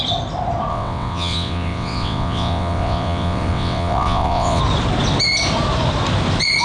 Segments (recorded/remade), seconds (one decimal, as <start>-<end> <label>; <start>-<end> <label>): 0.0-0.7 recorded; 0.7-4.6 remade; 4.6-6.6 recorded